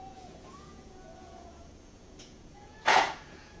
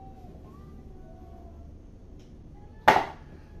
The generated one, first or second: first